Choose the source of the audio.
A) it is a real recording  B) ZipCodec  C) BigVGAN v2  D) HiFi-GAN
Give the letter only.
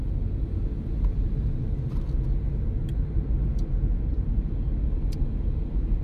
A